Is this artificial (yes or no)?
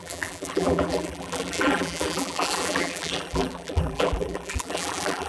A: yes